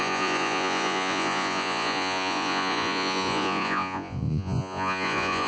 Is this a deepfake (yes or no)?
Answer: yes